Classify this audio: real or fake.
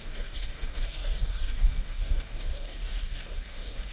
fake